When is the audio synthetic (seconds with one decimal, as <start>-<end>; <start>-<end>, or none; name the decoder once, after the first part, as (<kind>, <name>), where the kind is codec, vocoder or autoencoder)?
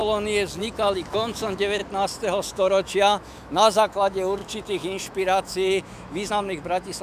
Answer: 0.6-1.8 (autoencoder, DAC-VAE); 2.5-7.0